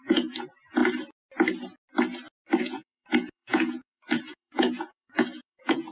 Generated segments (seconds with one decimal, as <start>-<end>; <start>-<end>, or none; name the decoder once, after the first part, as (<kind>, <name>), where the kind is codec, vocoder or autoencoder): 0.0-0.8 (vocoder, Vocos); 2.6-5.9